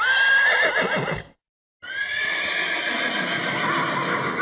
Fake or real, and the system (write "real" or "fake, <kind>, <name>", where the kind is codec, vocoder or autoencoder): real